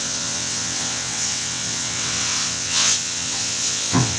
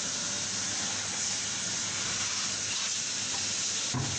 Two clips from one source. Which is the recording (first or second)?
second